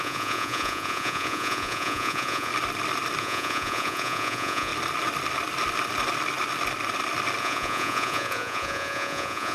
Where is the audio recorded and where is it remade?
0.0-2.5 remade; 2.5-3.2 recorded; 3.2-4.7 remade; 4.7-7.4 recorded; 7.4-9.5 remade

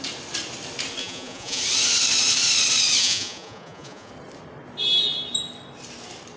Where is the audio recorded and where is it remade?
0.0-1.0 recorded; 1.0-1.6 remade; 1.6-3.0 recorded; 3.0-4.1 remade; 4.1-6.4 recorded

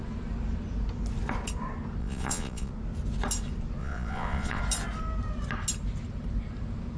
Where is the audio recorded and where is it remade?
0.0-2.0 recorded; 2.0-2.7 remade; 2.7-3.8 recorded; 3.8-4.6 remade; 4.6-7.0 recorded

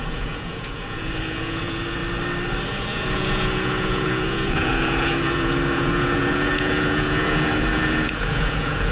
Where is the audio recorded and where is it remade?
0.0-2.0 remade; 2.0-2.7 recorded; 2.7-8.9 remade

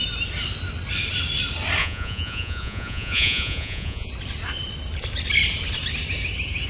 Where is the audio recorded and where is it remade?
0.0-1.8 recorded; 1.8-4.1 remade; 4.1-6.7 recorded

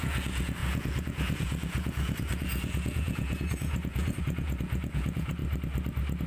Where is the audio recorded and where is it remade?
0.0-5.4 remade; 5.4-6.3 recorded